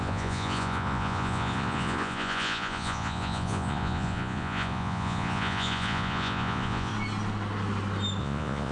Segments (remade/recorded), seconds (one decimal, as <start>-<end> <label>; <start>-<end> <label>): 0.0-6.9 remade; 6.9-8.2 recorded; 8.2-8.7 remade